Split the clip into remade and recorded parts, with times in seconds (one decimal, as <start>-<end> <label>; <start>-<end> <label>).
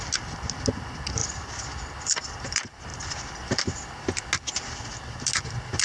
0.0-5.8 recorded